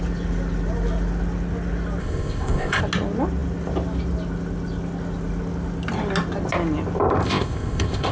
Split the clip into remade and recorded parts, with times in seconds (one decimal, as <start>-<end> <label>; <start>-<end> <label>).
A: 0.0-2.0 recorded; 2.0-2.8 remade; 2.8-7.2 recorded; 7.2-8.1 remade